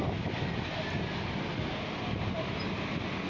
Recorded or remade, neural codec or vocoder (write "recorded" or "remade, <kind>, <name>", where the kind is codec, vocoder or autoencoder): recorded